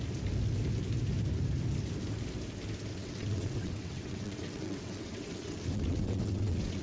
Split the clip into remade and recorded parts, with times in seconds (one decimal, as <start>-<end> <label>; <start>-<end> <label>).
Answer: 0.0-2.9 recorded; 2.9-6.8 remade